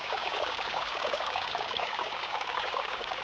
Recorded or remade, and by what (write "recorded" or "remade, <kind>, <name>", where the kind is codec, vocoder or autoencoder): remade, codec, DAC